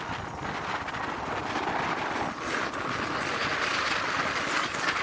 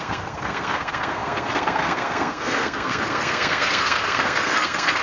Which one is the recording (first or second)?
first